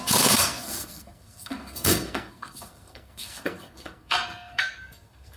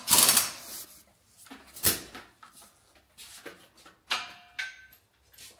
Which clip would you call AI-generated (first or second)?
first